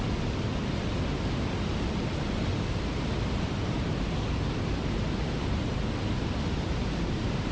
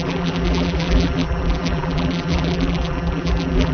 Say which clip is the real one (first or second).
first